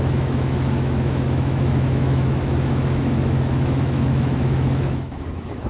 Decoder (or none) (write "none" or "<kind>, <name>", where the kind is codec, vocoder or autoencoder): autoencoder, DAC-VAE